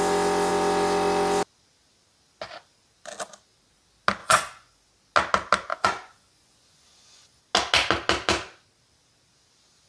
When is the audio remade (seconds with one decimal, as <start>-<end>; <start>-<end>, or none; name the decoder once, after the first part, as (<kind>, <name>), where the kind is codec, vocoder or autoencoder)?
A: 4.2-4.9 (vocoder, Vocos); 5.7-7.4